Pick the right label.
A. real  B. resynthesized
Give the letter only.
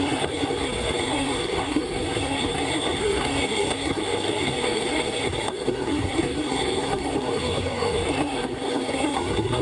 B